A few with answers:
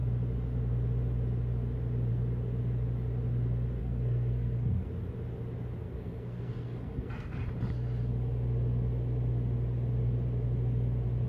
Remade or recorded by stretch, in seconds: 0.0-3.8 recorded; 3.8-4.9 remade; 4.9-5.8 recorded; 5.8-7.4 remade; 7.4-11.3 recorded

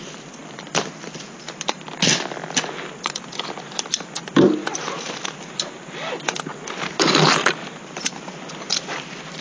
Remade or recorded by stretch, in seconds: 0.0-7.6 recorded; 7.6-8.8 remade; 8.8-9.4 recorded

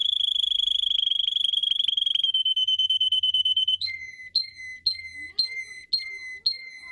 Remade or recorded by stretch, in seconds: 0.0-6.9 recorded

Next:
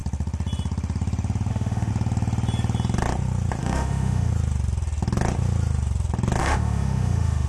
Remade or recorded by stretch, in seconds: 0.0-1.5 recorded; 1.5-1.9 remade; 1.9-3.6 recorded; 3.6-4.3 remade; 4.3-6.4 recorded; 6.4-7.5 remade

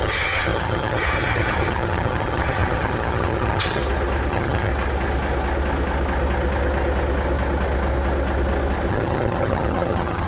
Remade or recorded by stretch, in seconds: 0.0-3.8 remade; 3.8-4.3 recorded; 4.3-4.7 remade; 4.7-8.9 recorded; 8.9-10.3 remade

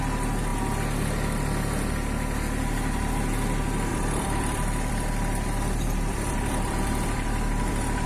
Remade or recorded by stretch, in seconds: 0.0-3.9 recorded; 3.9-8.1 remade